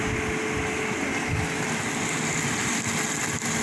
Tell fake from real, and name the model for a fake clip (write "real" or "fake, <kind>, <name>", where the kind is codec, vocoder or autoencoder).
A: real